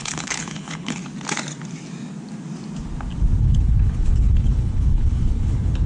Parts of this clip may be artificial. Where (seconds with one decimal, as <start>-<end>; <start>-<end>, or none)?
0.0-1.0; 3.4-5.9